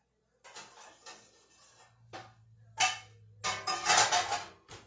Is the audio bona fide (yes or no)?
yes